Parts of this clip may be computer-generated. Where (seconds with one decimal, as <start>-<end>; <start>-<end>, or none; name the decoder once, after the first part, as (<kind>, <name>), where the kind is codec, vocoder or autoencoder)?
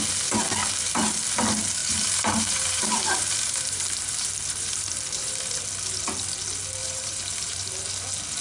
1.8-5.5 (vocoder, BigVGAN v2); 6.8-7.8